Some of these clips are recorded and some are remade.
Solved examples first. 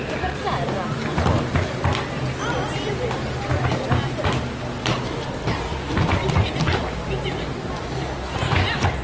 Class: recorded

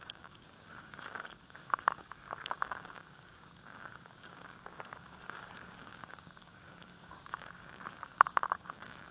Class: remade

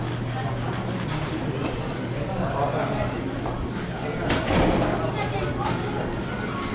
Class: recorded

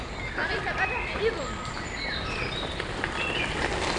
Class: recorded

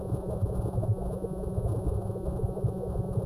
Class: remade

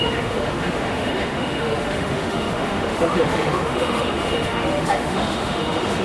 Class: remade